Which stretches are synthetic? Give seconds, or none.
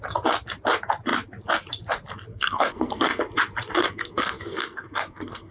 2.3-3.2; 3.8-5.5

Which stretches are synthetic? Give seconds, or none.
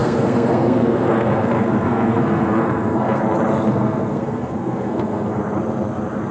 0.0-3.2; 3.7-5.4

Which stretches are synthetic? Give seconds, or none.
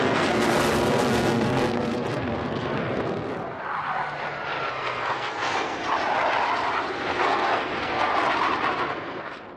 0.0-3.3; 4.7-5.8; 6.9-8.1; 8.8-9.6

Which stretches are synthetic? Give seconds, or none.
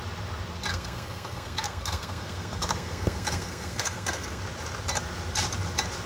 0.7-4.4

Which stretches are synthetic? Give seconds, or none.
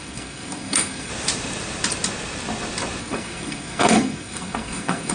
0.0-1.1; 3.0-5.1